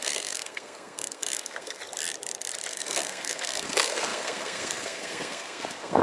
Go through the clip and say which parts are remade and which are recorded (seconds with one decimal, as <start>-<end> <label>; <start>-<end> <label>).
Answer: 0.0-1.8 remade; 1.8-2.7 recorded; 2.7-6.0 remade